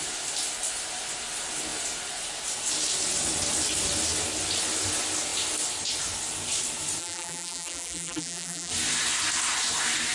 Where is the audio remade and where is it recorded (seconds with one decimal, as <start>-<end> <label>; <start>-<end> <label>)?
0.0-7.0 recorded; 7.0-8.7 remade; 8.7-10.1 recorded